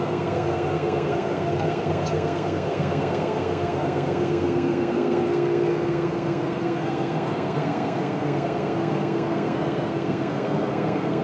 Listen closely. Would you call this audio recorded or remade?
remade